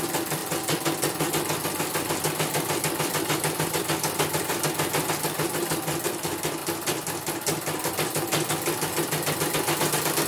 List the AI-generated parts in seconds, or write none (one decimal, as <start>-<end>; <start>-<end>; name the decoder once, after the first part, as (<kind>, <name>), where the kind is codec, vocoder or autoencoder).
none